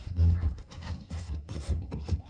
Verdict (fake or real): fake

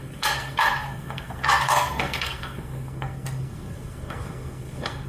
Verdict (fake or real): fake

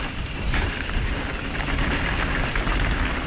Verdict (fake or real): real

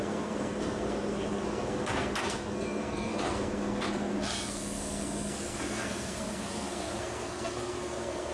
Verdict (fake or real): fake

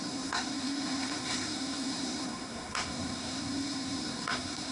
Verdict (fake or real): fake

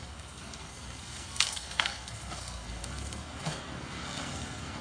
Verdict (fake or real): fake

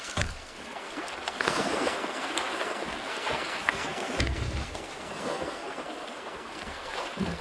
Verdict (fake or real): fake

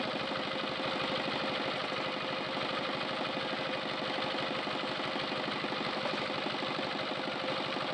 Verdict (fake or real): real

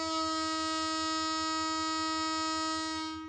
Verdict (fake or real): real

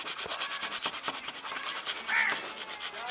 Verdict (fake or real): real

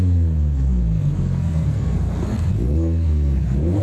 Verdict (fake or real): fake